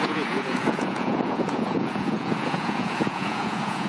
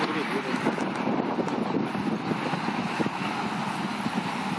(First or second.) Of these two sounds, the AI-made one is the first